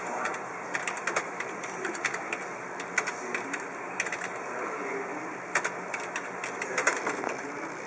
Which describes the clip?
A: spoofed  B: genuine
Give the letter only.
B